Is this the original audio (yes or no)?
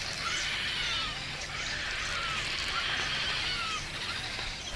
yes